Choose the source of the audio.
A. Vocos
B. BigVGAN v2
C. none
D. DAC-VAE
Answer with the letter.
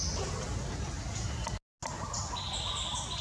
C